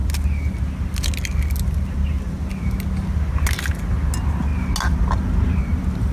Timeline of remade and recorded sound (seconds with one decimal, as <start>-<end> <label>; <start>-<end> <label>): 0.0-6.1 recorded